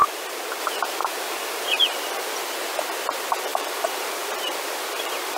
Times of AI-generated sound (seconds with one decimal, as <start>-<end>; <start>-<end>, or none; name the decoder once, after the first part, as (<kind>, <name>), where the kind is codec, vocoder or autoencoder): 0.0-0.6 (vocoder, BigVGAN v2); 1.0-1.6; 3.5-5.4